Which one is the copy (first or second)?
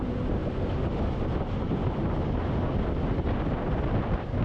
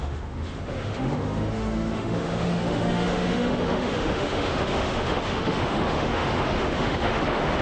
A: second